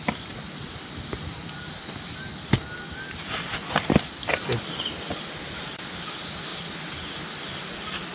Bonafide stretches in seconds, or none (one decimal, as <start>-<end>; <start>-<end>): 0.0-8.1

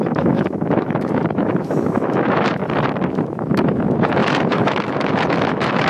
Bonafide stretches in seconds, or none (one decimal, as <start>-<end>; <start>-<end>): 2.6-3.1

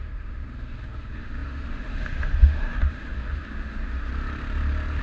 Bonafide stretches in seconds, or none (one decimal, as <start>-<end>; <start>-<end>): 4.1-5.0

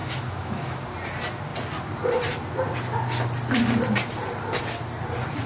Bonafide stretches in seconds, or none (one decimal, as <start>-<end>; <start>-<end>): 0.8-5.5